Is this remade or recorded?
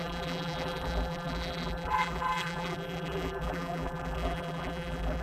remade